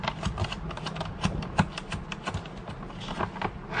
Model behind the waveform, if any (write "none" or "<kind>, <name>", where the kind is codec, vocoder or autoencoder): none